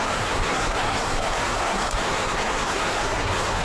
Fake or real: fake